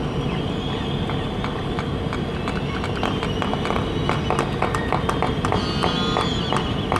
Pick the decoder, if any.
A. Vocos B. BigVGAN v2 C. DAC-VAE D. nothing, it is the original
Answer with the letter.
D